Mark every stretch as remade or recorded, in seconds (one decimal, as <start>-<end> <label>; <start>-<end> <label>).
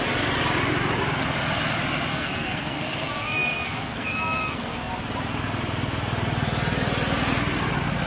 0.0-2.1 recorded; 2.1-5.0 remade; 5.0-8.1 recorded